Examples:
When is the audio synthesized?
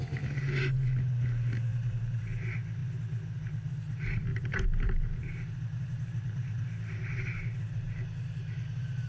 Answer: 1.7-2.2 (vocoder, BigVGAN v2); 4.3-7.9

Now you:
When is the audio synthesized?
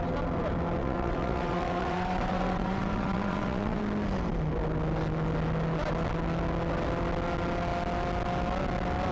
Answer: 0.8-3.8 (vocoder, WaveNeXt)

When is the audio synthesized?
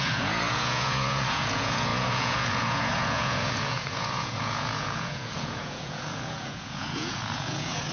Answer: 0.0-7.9 (vocoder, Vocos)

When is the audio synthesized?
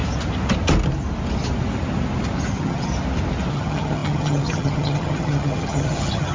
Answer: 2.5-2.9 (vocoder, HiFi-GAN); 3.5-6.3